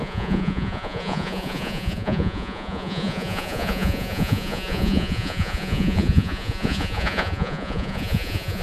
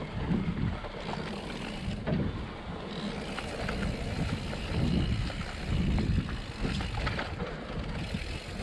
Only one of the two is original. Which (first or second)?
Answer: second